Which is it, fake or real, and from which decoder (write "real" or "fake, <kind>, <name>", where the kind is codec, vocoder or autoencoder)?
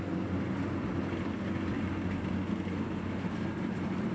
real